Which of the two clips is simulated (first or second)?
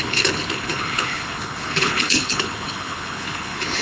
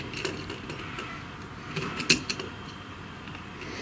first